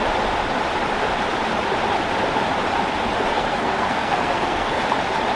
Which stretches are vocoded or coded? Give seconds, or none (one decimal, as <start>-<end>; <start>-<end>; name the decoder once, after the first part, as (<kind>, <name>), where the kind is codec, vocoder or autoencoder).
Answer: 3.3-4.8 (codec, SNAC)